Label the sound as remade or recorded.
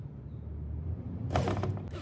recorded